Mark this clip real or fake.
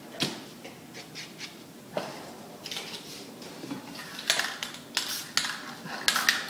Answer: real